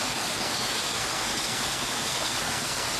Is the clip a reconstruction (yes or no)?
yes